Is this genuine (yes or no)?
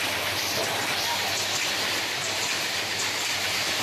no